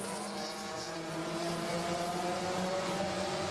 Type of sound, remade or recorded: remade